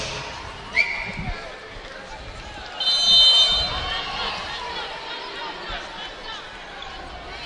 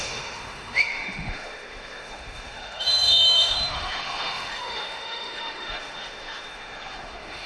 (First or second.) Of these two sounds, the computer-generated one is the second